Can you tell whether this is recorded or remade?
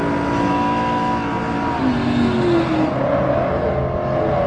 recorded